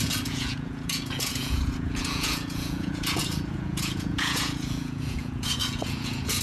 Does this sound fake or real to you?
fake